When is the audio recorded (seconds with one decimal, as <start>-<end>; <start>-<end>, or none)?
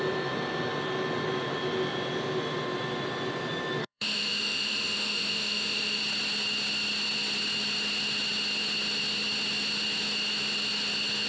0.0-3.8; 6.0-11.3